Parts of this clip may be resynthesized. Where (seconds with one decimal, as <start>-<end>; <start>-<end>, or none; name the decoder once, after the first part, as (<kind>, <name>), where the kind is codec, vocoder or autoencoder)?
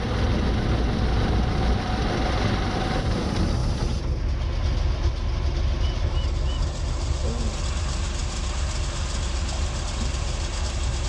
none